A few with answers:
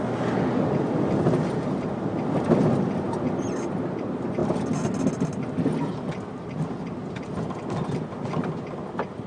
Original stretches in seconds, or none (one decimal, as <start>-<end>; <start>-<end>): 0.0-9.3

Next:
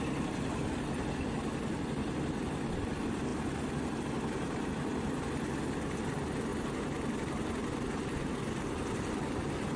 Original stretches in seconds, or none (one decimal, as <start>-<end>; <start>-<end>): 0.0-9.8

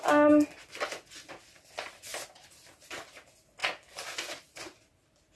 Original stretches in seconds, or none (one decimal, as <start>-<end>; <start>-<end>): 0.0-5.3

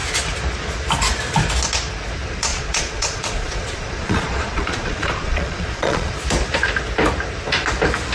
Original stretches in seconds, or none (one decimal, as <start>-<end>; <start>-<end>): 0.0-2.5; 6.1-8.1